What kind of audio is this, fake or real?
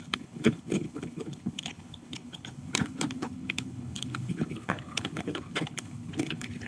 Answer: fake